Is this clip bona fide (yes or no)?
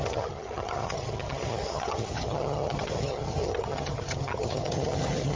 no